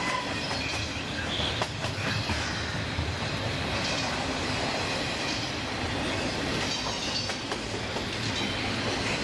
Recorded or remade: recorded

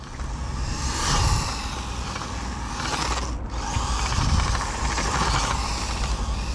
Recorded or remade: recorded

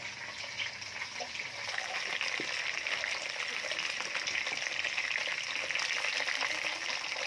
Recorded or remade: recorded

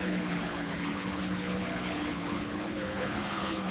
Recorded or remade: remade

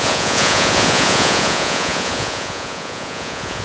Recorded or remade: remade